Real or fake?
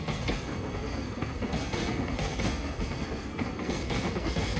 fake